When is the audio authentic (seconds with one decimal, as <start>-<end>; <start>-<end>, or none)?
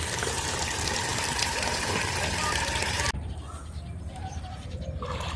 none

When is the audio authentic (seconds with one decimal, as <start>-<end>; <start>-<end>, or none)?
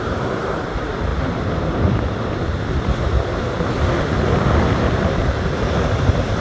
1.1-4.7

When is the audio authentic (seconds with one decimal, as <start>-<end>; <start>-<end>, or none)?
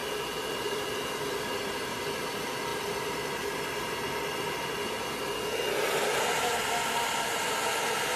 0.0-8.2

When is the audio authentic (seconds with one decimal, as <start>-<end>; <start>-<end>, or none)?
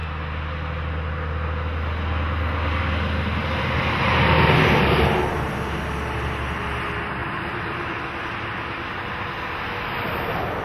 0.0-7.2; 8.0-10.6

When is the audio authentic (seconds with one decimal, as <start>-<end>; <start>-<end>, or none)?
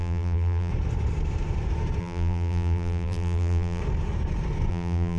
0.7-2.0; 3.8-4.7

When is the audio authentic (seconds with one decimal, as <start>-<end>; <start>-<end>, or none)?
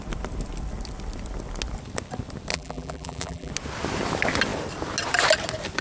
0.0-2.5; 3.5-5.8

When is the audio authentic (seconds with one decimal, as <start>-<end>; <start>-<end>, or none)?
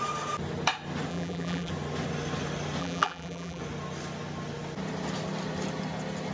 0.0-1.1; 1.7-2.8; 3.6-6.3